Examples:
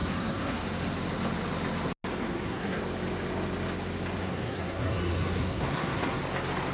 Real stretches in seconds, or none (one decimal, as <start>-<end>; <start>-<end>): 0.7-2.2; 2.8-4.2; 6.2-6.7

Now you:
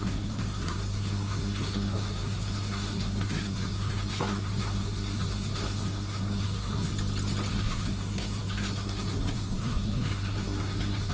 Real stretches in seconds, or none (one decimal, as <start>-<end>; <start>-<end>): 6.9-7.5

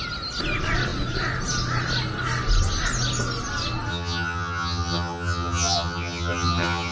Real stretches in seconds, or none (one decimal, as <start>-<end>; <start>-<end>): 0.0-3.9

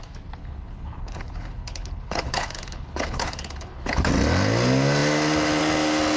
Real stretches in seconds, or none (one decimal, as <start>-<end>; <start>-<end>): 0.0-0.4; 4.1-6.2